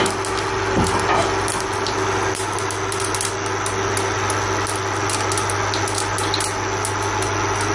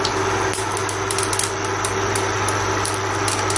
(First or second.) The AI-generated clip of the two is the second